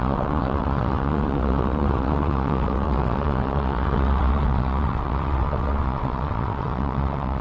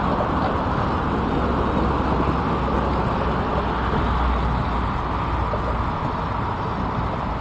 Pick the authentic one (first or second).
second